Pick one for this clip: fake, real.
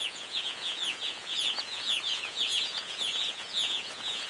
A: fake